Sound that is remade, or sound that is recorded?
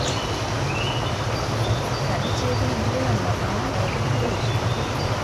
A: recorded